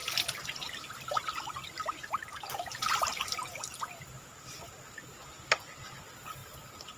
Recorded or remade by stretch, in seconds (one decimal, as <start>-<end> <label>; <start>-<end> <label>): 0.0-7.0 recorded